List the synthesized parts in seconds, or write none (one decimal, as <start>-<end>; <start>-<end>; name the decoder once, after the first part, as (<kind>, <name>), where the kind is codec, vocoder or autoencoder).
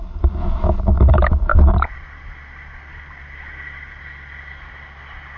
0.4-0.9 (autoencoder, DAC-VAE)